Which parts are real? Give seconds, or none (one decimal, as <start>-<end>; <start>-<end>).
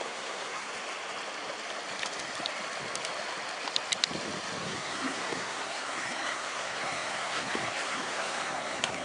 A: 0.7-4.6